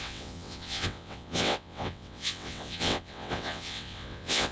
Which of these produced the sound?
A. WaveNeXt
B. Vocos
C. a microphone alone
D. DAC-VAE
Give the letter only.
A